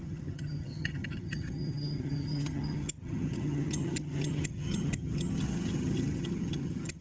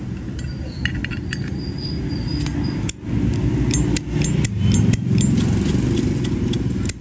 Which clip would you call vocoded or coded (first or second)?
first